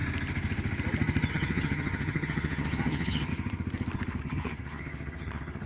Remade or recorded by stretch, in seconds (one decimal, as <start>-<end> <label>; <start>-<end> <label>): 0.0-1.3 recorded; 1.3-3.3 remade; 3.3-4.2 recorded; 4.2-5.7 remade